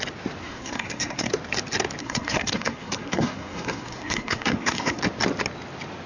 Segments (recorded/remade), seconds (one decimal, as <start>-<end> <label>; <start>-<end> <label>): 0.0-0.4 recorded; 0.4-1.3 remade; 1.3-2.0 recorded; 2.0-5.0 remade; 5.0-6.1 recorded